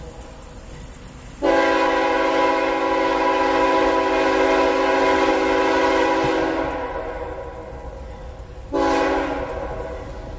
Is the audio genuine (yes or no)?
yes